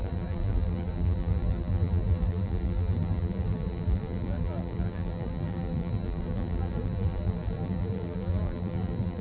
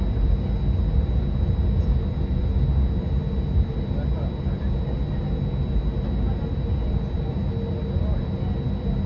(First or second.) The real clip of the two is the second